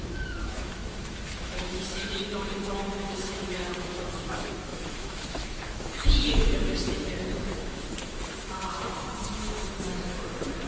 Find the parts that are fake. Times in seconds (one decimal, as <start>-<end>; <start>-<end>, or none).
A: 0.0-10.7